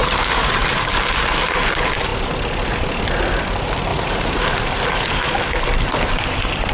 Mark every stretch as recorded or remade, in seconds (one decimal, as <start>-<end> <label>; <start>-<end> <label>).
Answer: 0.0-1.3 remade; 1.3-3.9 recorded; 3.9-4.6 remade; 4.6-6.7 recorded